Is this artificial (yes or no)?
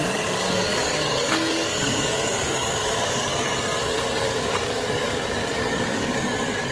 yes